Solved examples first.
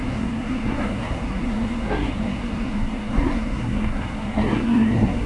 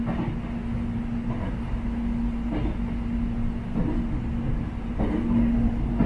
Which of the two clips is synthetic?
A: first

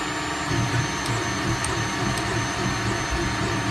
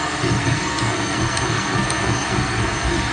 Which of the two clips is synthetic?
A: second